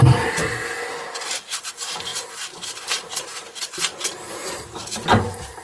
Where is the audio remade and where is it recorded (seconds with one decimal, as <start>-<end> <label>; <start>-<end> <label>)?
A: 0.0-0.4 remade; 0.4-1.6 recorded; 1.6-5.6 remade